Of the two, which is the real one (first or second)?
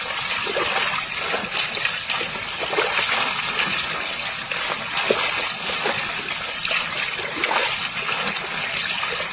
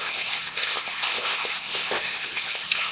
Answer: first